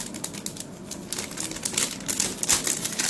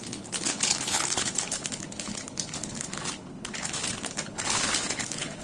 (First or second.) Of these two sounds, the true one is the first